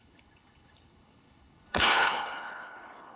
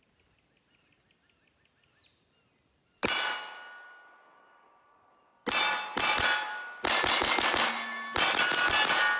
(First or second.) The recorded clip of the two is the second